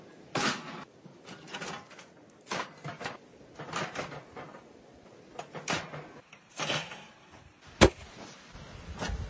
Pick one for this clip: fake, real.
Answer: real